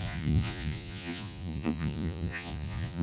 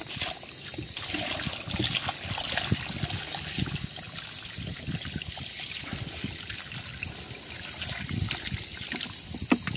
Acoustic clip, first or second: second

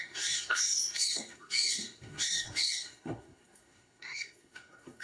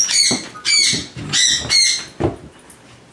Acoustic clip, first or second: second